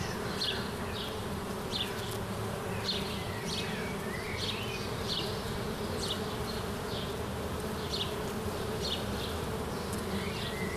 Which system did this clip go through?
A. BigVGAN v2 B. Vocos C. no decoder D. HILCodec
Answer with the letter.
C